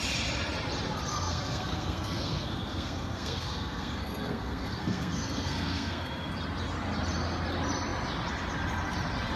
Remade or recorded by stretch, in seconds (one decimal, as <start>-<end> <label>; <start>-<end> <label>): 0.0-1.1 recorded; 1.1-6.3 remade; 6.3-9.4 recorded